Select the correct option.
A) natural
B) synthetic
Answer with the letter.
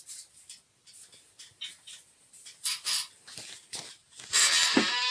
A